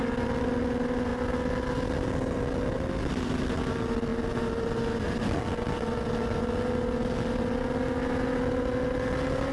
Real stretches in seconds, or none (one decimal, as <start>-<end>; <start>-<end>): 0.0-9.5